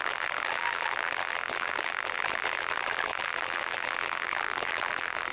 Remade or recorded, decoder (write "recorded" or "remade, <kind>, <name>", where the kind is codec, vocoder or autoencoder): remade, vocoder, BigVGAN v2